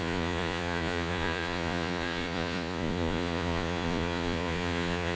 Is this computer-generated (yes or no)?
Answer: yes